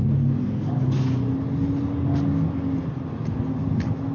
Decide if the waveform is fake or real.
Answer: real